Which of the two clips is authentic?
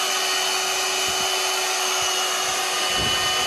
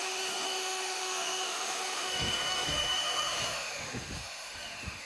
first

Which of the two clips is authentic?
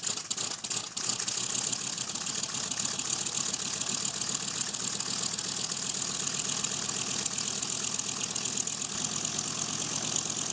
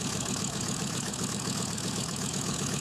first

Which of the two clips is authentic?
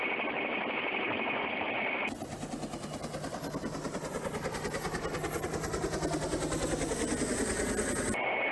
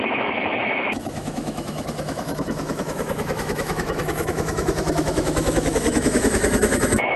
first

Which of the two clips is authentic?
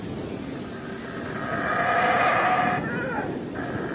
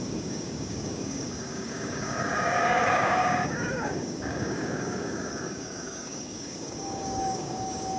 first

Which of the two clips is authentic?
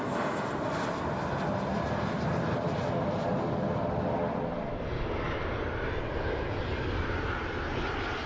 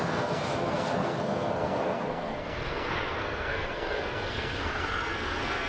first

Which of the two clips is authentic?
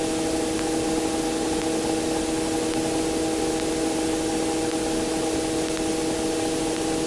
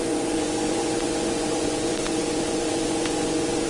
first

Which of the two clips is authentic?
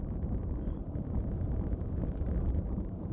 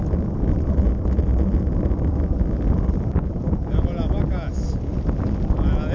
second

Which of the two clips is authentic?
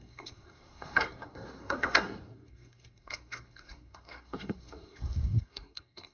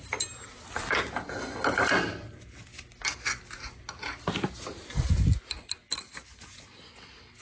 second